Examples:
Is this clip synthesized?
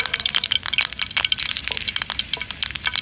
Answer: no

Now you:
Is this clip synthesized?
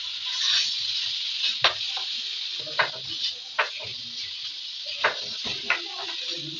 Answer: no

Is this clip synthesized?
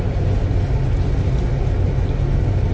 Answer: no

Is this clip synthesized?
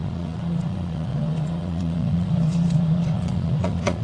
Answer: yes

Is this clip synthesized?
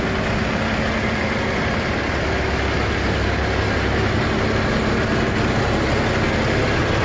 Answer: no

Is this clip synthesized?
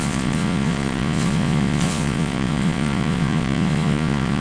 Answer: yes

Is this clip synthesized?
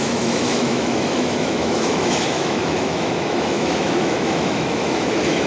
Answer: yes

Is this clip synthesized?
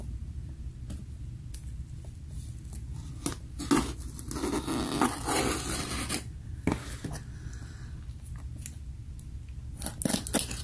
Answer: no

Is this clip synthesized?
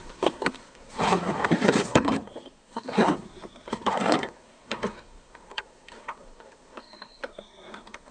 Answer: yes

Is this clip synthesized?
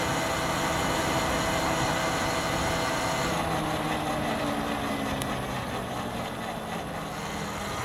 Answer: no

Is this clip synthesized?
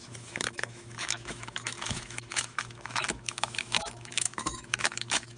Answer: yes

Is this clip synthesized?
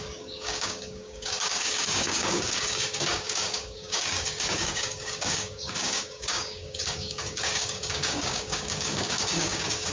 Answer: yes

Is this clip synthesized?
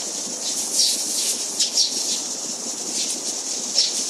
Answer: no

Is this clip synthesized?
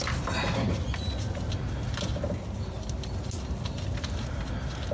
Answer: no